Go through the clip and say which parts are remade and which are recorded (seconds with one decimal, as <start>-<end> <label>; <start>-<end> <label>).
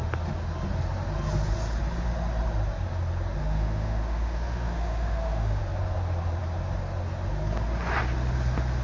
0.0-3.4 recorded; 3.4-5.6 remade; 5.6-8.8 recorded